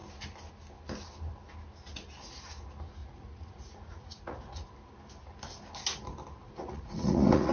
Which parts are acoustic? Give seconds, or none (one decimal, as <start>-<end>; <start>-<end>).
0.0-3.0; 4.7-6.4